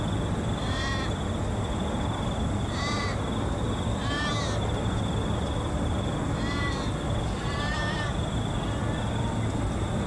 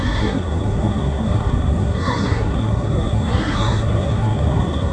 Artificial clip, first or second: second